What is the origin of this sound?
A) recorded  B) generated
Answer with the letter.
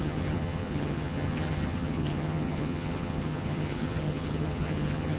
B